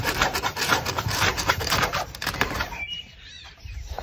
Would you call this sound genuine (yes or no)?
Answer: no